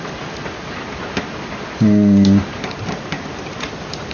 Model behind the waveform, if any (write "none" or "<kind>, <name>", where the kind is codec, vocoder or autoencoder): none